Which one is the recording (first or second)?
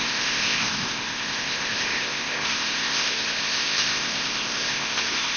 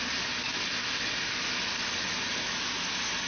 second